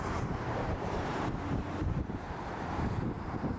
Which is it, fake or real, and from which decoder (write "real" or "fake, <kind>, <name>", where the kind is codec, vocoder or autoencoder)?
fake, vocoder, BigVGAN v2